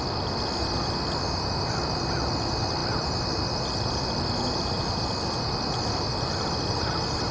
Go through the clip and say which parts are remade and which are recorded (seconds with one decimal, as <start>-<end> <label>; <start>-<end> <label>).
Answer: 0.0-7.3 recorded